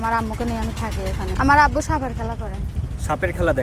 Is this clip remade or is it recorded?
recorded